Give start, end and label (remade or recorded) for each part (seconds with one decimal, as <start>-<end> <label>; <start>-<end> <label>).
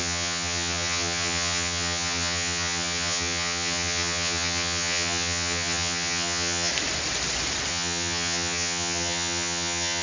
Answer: 0.0-6.7 remade; 6.7-7.7 recorded; 7.7-10.0 remade